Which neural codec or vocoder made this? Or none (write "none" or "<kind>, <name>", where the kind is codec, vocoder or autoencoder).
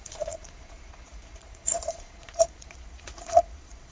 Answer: vocoder, Vocos